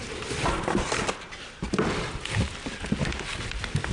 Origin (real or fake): real